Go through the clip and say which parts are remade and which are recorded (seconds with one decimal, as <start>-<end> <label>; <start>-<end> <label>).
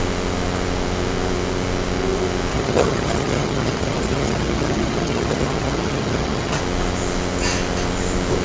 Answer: 0.0-2.5 recorded; 2.5-6.6 remade; 6.6-8.4 recorded